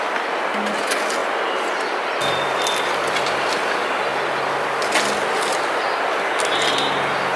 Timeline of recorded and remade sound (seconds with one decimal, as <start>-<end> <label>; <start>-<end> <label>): 0.0-7.4 recorded